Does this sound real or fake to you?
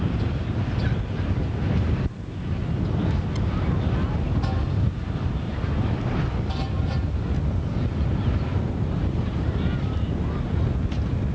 real